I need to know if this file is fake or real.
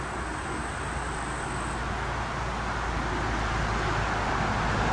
real